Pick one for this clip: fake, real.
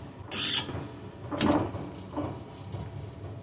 real